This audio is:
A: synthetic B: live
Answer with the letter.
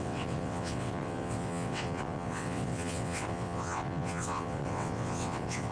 A